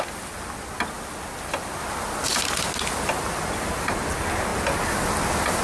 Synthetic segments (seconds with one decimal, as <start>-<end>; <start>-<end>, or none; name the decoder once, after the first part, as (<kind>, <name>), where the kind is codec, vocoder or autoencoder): none